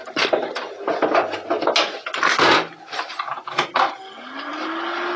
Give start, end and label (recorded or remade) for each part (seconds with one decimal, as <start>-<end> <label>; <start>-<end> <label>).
0.0-0.8 remade; 0.8-5.2 recorded